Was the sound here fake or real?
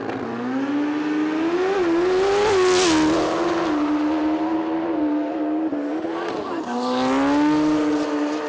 real